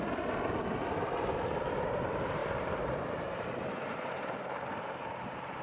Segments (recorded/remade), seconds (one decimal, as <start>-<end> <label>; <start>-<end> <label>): 0.0-5.6 recorded